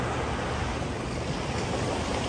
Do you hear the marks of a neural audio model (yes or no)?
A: no